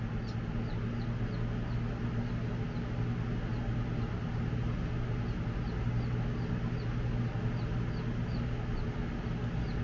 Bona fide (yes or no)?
yes